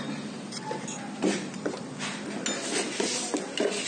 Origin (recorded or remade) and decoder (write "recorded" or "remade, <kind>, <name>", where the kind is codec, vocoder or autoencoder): recorded